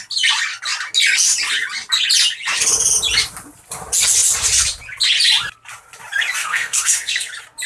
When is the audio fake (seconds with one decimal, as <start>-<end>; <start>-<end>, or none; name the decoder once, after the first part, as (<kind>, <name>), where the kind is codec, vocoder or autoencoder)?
6.4-7.3 (codec, SNAC)